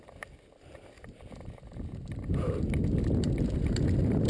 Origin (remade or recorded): recorded